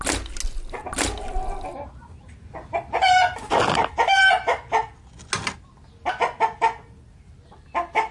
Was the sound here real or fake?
real